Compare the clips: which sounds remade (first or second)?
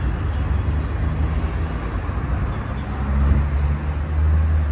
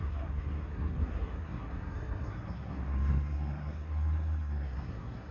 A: second